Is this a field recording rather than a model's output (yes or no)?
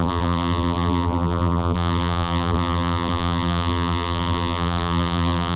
no